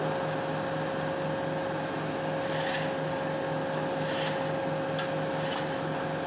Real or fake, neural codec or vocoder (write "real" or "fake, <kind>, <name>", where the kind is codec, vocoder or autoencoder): real